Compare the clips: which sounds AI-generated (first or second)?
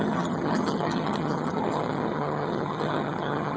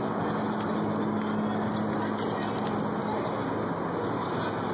first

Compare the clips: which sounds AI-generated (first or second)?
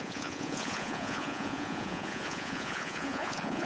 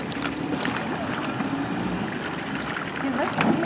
first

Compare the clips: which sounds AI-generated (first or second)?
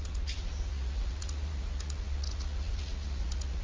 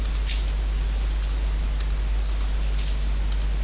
first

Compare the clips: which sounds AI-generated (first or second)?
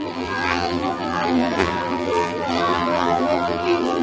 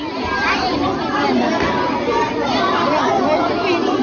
first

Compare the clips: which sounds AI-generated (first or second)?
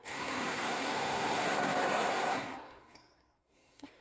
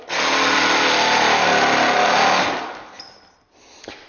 first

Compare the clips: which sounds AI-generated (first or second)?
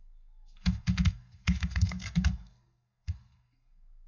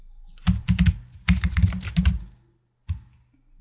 first